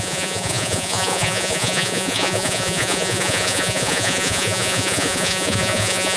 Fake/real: fake